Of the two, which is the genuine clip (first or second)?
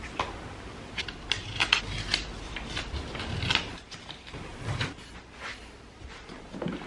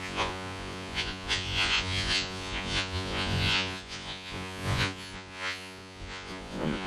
first